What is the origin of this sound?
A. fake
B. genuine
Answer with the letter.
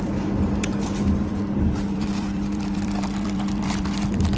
A